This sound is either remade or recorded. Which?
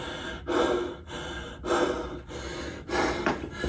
recorded